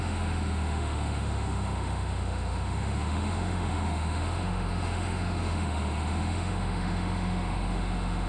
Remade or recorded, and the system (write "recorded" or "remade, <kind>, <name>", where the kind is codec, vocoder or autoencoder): remade, autoencoder, DAC-VAE